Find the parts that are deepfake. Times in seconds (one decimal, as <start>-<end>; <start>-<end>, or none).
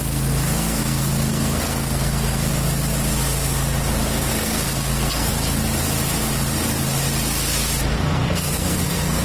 0.0-2.5; 4.3-5.3; 7.9-9.2